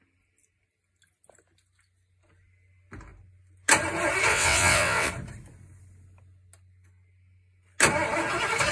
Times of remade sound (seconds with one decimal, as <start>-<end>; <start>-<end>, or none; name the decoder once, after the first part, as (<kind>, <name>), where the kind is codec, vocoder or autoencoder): 4.3-5.1 (vocoder, WaveNeXt)

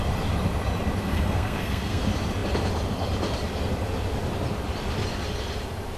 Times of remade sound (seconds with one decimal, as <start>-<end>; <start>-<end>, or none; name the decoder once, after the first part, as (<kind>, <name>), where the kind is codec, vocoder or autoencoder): 1.1-2.0 (codec, SNAC)

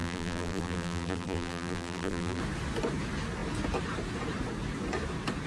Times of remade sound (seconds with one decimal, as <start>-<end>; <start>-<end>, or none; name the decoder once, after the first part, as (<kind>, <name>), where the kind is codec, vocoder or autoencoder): 0.0-2.4 (vocoder, BigVGAN v2)

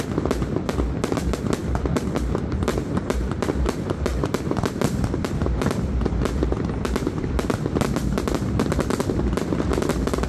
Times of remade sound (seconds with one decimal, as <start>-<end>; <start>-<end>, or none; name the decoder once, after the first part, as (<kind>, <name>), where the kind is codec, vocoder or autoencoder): 1.6-3.3 (vocoder, BigVGAN v2); 4.1-4.7

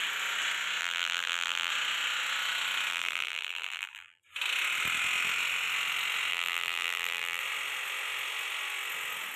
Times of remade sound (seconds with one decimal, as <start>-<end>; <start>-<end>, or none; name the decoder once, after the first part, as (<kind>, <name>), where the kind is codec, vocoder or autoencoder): 0.8-1.7 (vocoder, BigVGAN v2); 2.9-4.2; 6.3-7.4

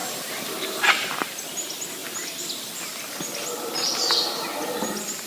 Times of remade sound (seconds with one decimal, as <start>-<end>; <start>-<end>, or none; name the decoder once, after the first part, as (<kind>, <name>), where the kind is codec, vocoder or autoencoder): none

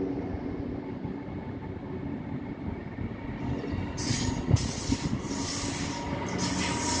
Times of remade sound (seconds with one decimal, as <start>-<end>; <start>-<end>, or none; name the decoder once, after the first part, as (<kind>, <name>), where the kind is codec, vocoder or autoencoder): none